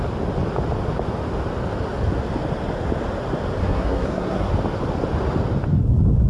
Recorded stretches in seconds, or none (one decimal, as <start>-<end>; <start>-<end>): 0.0-3.6; 4.5-6.3